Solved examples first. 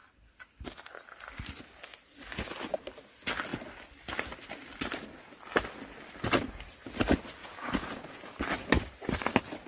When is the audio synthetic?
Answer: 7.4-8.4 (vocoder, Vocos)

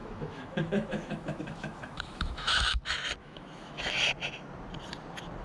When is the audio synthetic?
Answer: 0.0-2.8 (autoencoder, DAC-VAE); 3.2-4.0

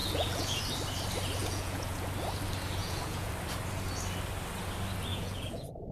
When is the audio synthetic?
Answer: 0.0-0.6 (vocoder, Vocos); 1.4-2.1; 2.8-3.3; 5.1-5.9

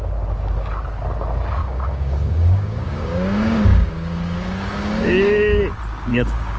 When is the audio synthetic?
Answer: 1.6-5.6 (codec, DAC); 6.1-6.6

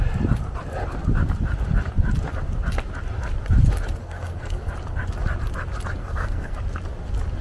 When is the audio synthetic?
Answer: 4.0-4.7 (codec, SNAC); 6.0-6.6

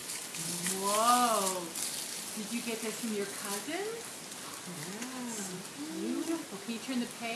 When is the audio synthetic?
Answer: 0.0-0.7 (codec, HILCodec)

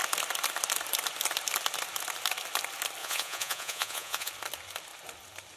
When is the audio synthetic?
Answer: 3.0-4.3 (vocoder, Vocos)

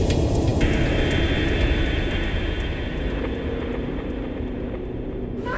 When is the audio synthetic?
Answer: none